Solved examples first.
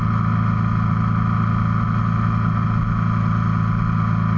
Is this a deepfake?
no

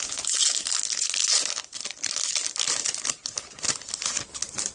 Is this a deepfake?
no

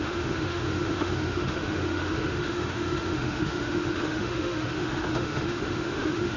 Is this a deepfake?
yes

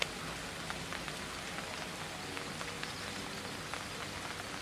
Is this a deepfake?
no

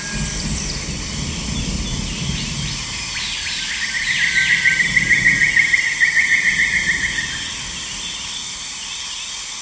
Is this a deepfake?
no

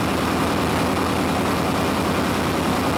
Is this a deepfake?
no